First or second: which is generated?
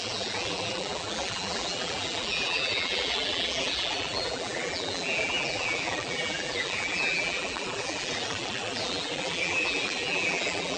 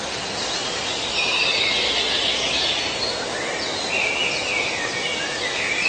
first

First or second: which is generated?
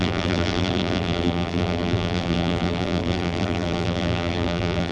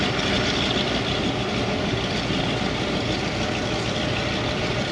first